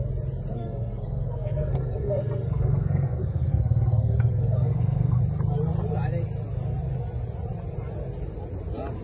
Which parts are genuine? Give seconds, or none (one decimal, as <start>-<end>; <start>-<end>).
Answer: 0.0-0.5; 5.2-9.0